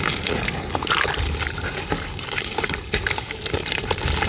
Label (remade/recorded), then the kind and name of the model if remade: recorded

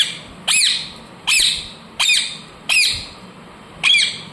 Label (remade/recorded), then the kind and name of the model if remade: recorded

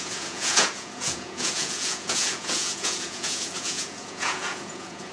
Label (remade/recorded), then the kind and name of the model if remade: remade, vocoder, Vocos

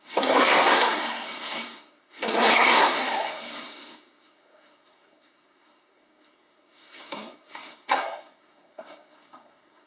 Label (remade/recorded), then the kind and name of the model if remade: remade, codec, SNAC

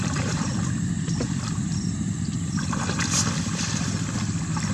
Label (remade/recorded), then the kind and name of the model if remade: remade, vocoder, BigVGAN v2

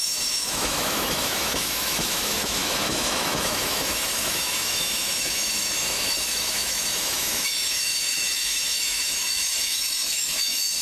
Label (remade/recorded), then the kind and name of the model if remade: remade, autoencoder, DAC-VAE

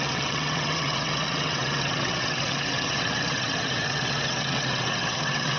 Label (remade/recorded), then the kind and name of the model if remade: remade, vocoder, WaveNeXt